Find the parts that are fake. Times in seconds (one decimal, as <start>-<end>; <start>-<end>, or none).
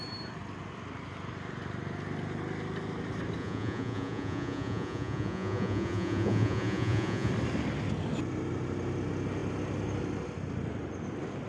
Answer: 3.4-7.3